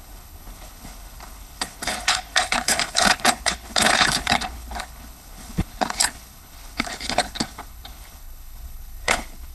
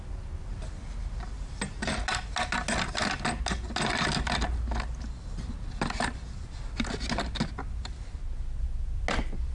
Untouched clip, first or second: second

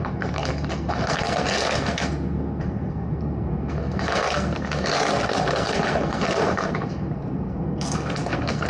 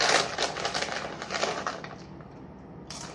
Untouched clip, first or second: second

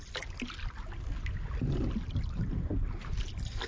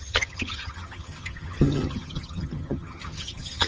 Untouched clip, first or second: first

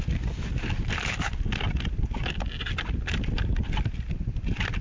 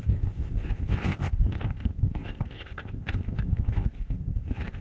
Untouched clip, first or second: first